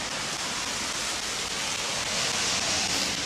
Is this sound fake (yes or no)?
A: no